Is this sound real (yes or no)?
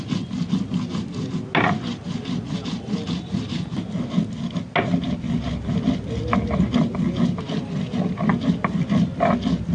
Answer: yes